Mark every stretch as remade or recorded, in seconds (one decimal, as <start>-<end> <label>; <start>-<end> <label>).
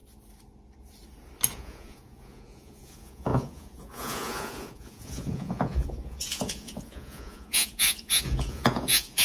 0.0-1.5 recorded; 1.5-9.2 remade